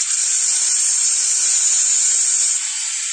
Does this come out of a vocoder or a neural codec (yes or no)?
no